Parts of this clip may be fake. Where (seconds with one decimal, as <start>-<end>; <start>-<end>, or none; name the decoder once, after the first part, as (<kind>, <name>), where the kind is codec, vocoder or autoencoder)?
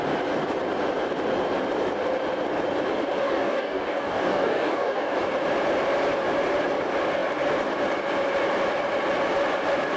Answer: 3.2-5.2 (codec, DAC)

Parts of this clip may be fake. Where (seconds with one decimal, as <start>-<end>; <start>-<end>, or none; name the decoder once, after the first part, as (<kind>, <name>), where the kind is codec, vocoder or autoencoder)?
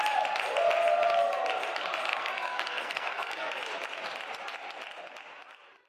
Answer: 2.1-3.5 (codec, SNAC)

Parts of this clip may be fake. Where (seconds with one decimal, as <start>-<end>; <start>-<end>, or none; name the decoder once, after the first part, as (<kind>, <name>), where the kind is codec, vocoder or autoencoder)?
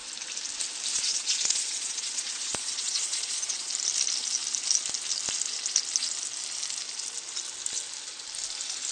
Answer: 0.9-3.7 (vocoder, Vocos)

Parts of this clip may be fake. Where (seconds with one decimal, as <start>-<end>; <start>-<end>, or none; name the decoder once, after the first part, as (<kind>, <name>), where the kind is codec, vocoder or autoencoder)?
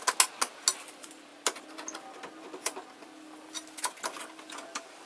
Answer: none